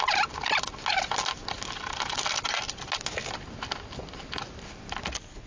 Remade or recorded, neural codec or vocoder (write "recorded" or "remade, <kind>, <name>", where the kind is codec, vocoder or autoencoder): recorded